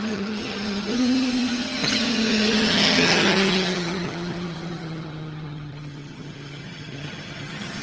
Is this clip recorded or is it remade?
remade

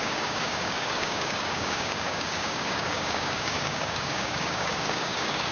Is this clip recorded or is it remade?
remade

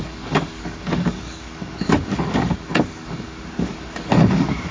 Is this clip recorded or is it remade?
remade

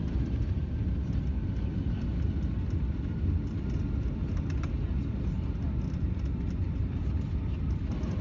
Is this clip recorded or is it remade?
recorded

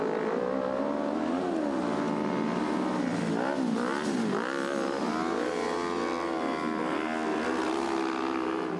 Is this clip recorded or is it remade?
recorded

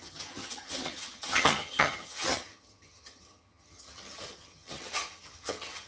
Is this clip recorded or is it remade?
remade